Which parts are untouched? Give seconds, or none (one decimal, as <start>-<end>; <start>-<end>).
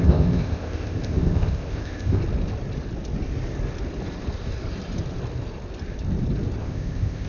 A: 2.2-6.6